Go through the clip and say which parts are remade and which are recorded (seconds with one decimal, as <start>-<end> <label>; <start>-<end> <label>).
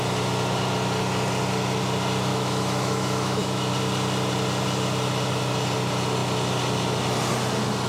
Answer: 0.0-2.3 recorded; 2.3-3.7 remade; 3.7-7.9 recorded